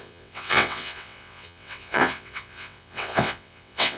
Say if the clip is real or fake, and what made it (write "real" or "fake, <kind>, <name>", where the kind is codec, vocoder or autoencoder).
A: fake, vocoder, WaveNeXt